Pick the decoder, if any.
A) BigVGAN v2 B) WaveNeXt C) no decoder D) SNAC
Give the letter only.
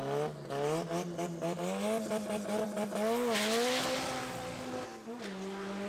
C